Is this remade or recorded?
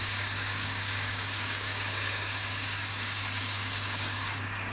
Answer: remade